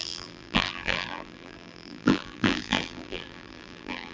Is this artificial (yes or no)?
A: yes